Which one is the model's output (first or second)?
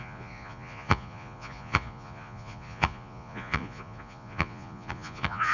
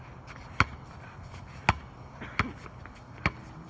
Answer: first